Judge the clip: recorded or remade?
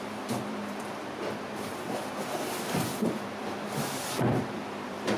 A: remade